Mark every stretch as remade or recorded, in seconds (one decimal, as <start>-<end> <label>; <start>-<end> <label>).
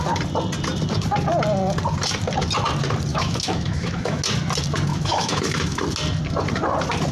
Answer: 0.0-3.1 recorded; 3.1-4.2 remade; 4.2-4.9 recorded; 4.9-5.8 remade; 5.8-7.1 recorded